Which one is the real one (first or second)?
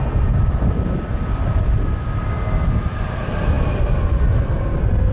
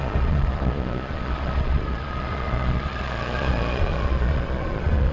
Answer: first